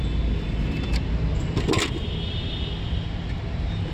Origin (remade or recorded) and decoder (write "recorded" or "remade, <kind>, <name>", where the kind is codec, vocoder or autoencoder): recorded